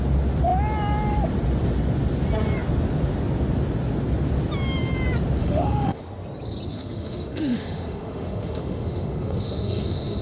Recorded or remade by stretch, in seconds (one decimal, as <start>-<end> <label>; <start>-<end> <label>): 0.0-5.4 recorded; 5.4-6.0 remade; 6.0-6.7 recorded; 6.7-10.2 remade